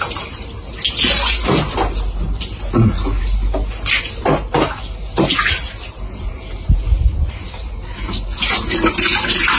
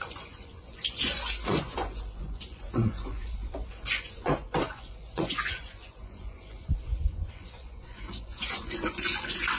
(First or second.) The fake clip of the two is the second